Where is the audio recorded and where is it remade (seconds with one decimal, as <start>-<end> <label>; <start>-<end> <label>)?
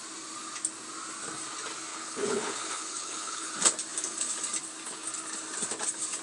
0.0-1.9 recorded; 1.9-3.5 remade; 3.5-6.2 recorded